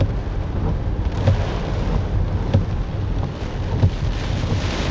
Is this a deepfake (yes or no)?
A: no